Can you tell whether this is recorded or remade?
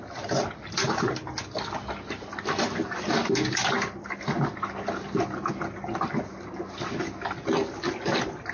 recorded